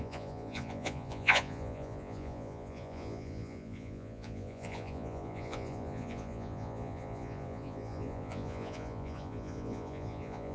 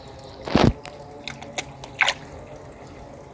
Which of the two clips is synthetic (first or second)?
first